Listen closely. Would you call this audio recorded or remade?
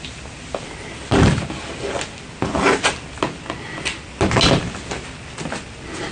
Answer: recorded